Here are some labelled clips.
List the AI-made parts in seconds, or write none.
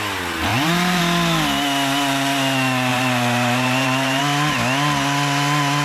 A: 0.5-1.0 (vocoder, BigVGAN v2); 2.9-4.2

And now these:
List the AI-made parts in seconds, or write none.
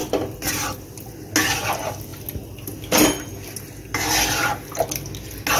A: none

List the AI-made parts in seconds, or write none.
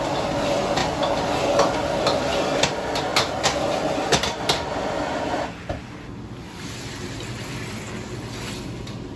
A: 6.4-7.8 (vocoder, BigVGAN v2)